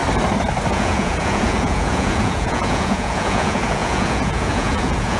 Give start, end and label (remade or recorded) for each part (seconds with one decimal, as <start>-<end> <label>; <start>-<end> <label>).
0.0-0.7 recorded; 0.7-5.2 remade